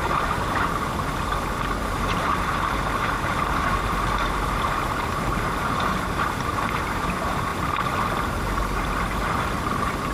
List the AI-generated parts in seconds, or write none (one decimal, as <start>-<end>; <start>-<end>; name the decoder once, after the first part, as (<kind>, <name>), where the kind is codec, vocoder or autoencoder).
0.0-7.5 (vocoder, BigVGAN v2); 8.6-10.1